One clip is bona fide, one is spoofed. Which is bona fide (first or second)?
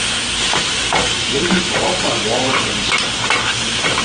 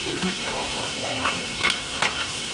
first